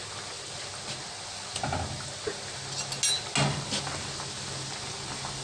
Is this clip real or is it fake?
real